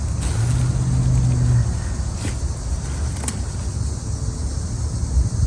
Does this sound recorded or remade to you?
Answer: recorded